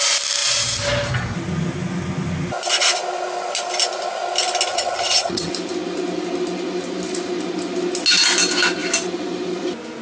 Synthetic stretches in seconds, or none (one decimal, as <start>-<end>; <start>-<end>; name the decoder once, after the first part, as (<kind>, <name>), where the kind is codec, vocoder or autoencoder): 4.7-5.5 (vocoder, HiFi-GAN)